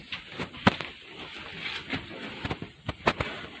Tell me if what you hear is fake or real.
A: real